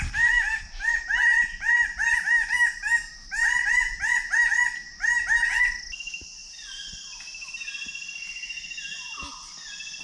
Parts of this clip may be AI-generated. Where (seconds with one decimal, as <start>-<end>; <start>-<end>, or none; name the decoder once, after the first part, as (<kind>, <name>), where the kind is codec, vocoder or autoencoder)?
none